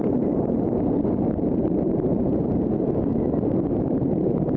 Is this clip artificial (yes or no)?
yes